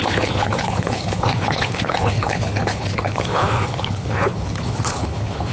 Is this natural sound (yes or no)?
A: no